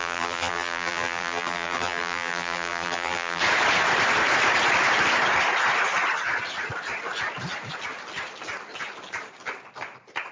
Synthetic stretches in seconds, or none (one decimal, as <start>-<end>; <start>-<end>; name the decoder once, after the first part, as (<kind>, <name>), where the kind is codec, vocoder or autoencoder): 0.0-3.4 (vocoder, BigVGAN v2)